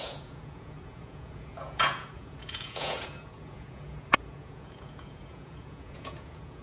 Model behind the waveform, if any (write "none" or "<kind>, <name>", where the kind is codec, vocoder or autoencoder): vocoder, Vocos